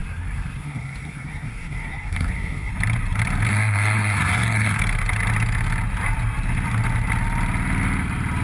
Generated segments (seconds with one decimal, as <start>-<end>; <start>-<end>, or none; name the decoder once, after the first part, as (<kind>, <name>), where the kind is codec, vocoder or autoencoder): 0.0-2.7 (codec, SNAC); 3.5-4.8